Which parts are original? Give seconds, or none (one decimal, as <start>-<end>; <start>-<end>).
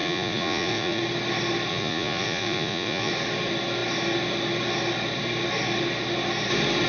1.0-1.7; 3.1-6.9